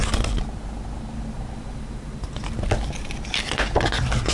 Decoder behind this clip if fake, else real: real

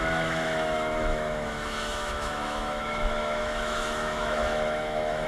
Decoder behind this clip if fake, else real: fake, autoencoder, DAC-VAE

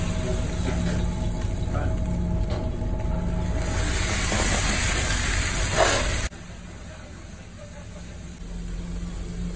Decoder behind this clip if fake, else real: real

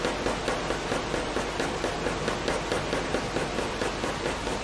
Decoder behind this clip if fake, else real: real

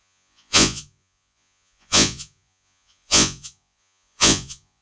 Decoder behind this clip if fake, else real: fake, vocoder, Vocos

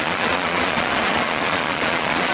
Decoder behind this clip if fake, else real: fake, vocoder, Vocos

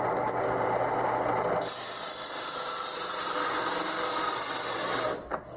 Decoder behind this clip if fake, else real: real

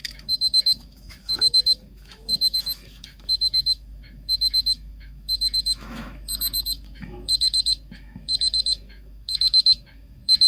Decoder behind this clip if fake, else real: fake, autoencoder, DAC-VAE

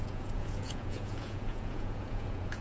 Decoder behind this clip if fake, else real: fake, vocoder, Vocos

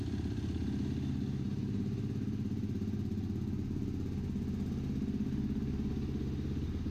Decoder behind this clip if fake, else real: real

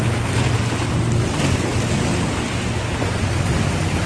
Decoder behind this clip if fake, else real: real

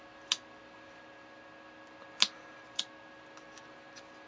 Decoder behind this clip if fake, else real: real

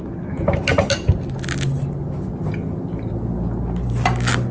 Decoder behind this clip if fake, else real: real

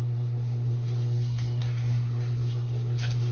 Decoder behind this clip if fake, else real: fake, codec, SNAC